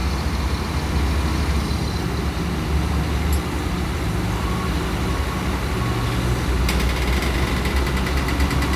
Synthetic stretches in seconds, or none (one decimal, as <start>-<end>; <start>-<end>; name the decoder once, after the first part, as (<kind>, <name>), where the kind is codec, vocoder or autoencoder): none